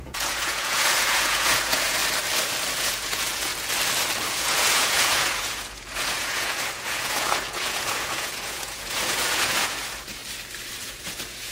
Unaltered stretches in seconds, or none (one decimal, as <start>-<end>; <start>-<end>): 2.0-2.8; 3.5-4.3; 10.2-10.8